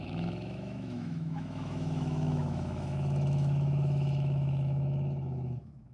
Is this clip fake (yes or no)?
yes